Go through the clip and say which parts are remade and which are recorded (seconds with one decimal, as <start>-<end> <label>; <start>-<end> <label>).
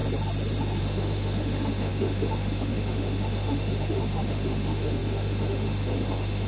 0.0-0.8 recorded; 0.8-6.5 remade